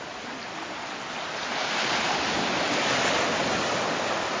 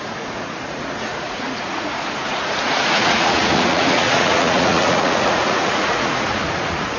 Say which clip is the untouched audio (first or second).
first